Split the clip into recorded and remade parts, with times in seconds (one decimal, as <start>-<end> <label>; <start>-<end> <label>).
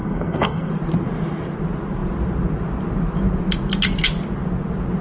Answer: 0.0-0.7 remade; 0.7-5.0 recorded